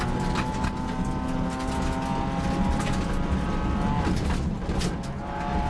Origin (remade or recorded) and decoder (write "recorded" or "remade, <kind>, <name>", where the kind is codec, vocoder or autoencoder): recorded